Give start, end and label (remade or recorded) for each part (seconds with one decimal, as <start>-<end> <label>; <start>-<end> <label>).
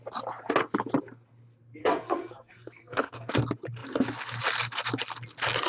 0.0-1.8 recorded; 1.8-3.3 remade; 3.3-5.7 recorded